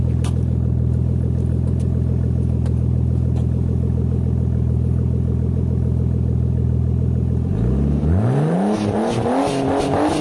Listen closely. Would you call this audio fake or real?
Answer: real